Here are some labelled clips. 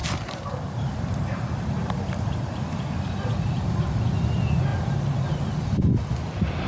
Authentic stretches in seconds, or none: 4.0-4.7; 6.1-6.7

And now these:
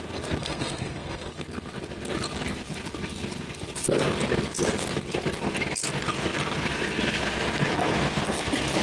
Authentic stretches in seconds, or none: 0.0-0.4; 1.3-8.8

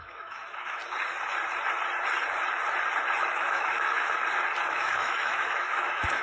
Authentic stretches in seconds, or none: 0.8-3.2; 4.2-4.7

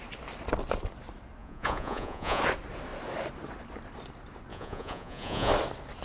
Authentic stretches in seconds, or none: 0.0-1.4; 2.4-4.5; 5.5-6.0